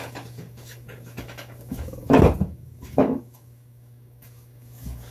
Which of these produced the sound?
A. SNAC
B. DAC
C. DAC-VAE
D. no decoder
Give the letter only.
B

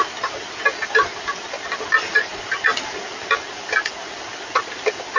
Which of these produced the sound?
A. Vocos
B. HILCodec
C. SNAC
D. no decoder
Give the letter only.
D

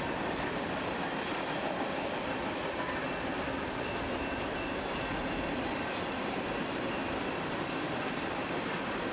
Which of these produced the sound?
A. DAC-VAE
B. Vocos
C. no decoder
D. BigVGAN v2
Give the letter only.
D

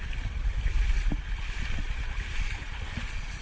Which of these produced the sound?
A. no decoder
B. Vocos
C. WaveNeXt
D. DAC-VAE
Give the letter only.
A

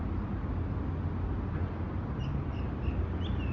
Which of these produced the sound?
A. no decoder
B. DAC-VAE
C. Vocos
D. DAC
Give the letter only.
A